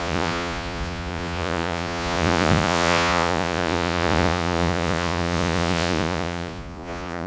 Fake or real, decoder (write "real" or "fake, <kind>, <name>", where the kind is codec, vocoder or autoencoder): fake, vocoder, Vocos